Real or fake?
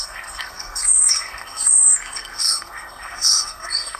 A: fake